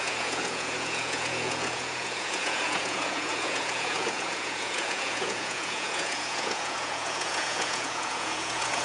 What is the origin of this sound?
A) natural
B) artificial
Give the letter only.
B